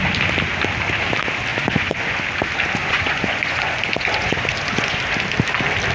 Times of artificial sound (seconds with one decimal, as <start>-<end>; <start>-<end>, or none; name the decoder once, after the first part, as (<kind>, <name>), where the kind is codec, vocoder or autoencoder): 1.5-2.2 (vocoder, Vocos); 2.8-5.0